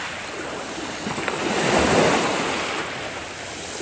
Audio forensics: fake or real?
real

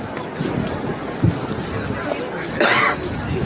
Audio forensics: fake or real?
real